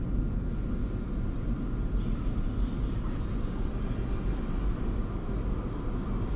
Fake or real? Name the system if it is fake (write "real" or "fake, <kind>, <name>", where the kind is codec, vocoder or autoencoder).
real